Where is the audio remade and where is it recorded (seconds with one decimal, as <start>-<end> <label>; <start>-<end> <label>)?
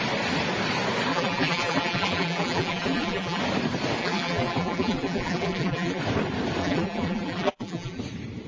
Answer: 0.0-1.1 recorded; 1.1-3.4 remade; 3.4-4.0 recorded; 4.0-6.0 remade; 6.0-6.6 recorded; 6.6-8.0 remade; 8.0-8.5 recorded